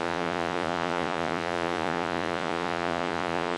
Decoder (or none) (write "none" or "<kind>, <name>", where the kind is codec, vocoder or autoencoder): vocoder, Vocos